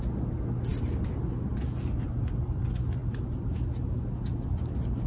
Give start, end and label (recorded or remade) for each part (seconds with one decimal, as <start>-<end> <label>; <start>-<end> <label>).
0.0-5.1 recorded